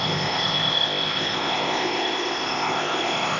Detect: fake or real fake